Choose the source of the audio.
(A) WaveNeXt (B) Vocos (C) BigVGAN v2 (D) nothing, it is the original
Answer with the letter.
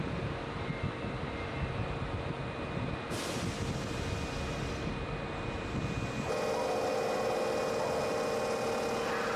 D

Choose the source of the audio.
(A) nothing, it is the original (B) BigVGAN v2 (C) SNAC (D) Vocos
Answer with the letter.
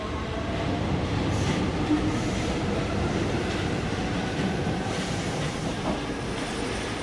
B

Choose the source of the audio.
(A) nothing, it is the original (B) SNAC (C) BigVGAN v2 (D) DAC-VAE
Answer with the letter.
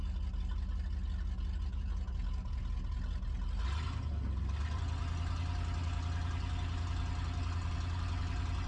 A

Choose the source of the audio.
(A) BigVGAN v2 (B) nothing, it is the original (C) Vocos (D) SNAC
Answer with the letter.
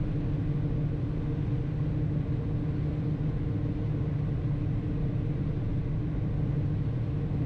B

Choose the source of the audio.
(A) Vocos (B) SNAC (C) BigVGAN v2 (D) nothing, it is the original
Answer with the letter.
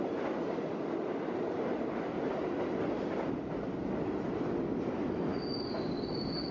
D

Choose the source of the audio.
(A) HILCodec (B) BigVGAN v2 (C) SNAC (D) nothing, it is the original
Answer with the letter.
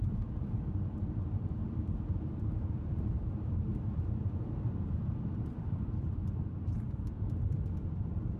B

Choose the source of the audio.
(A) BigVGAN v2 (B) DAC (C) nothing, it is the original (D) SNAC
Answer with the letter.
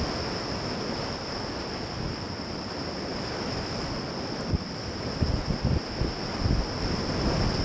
A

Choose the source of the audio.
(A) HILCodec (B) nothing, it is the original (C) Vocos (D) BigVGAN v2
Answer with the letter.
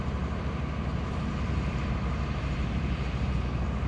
D